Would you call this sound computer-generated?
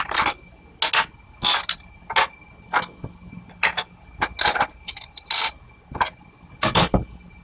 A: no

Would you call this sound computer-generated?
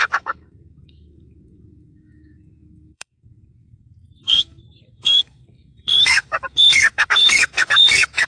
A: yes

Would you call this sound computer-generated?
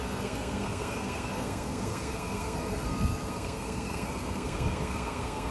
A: yes